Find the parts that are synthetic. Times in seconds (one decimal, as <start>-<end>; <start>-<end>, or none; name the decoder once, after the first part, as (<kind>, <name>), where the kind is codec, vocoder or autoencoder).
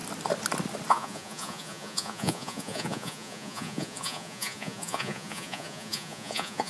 0.9-6.7 (vocoder, Vocos)